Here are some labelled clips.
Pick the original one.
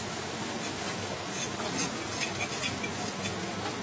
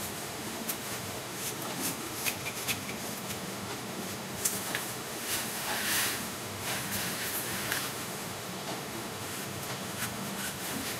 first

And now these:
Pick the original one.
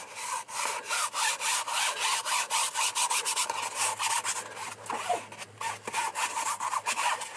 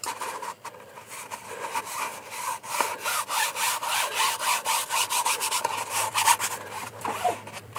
first